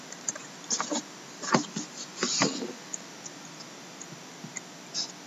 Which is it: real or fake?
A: real